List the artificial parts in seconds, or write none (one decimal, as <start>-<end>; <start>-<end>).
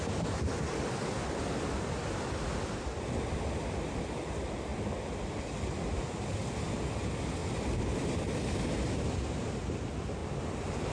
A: none